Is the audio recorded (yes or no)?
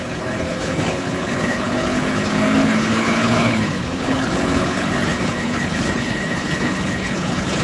no